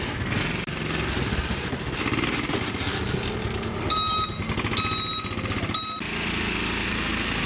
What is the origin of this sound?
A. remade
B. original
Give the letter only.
B